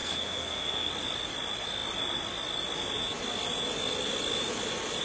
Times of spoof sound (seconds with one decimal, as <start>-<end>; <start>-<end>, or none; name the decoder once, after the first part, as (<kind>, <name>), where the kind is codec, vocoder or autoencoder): 0.0-0.9 (codec, SNAC)